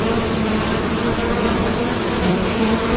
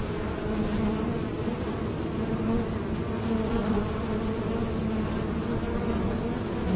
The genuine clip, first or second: second